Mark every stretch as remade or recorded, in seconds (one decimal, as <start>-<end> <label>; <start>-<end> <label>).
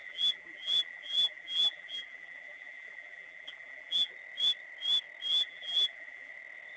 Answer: 0.0-4.1 remade; 4.1-5.3 recorded; 5.3-6.3 remade; 6.3-6.8 recorded